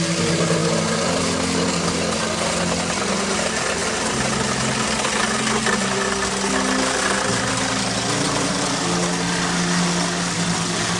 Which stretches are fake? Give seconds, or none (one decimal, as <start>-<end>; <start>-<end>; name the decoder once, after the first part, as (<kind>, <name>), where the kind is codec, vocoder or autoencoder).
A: none

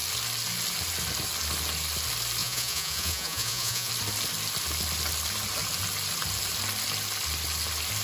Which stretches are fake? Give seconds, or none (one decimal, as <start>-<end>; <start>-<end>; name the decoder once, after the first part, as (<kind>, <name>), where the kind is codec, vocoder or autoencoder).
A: 2.4-3.9 (vocoder, Vocos)

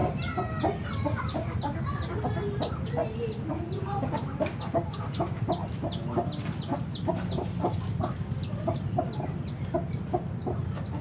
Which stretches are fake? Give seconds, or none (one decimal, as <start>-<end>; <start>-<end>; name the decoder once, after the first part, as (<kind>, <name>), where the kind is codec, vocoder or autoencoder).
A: none

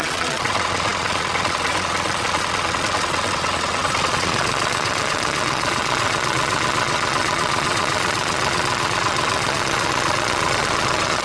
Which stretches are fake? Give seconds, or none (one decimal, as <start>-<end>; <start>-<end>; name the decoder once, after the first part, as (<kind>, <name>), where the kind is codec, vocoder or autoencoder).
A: 0.0-11.2 (vocoder, Vocos)